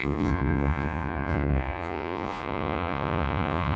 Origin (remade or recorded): remade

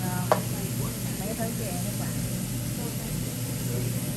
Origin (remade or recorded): recorded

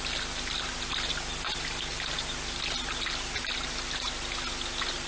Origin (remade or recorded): recorded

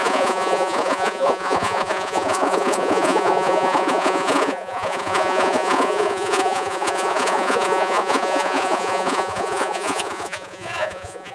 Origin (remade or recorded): remade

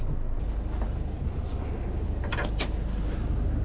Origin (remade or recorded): recorded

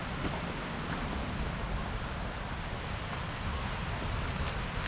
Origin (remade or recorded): recorded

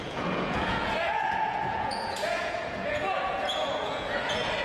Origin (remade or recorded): remade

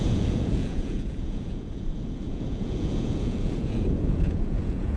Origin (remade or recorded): remade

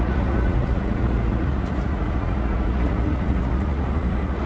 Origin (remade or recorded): remade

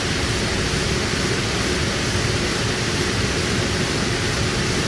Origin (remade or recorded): recorded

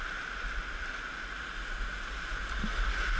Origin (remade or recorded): recorded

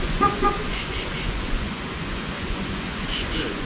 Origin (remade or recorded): remade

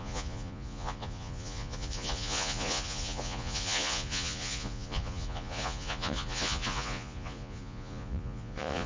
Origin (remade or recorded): remade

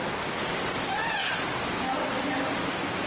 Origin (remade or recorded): recorded